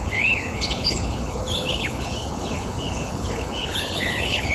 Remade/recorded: remade